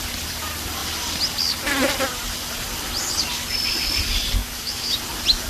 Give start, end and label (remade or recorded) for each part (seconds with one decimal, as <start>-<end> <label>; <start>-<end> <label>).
0.0-4.4 recorded; 4.4-4.9 remade; 4.9-5.5 recorded